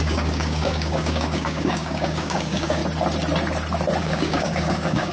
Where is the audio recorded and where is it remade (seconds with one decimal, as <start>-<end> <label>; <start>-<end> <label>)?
0.0-2.8 remade; 2.8-4.0 recorded; 4.0-5.1 remade